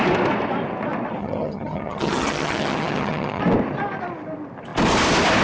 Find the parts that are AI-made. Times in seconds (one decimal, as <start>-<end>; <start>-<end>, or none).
1.2-3.4